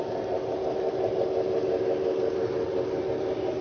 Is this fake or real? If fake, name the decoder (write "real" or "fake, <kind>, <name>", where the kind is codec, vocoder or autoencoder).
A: real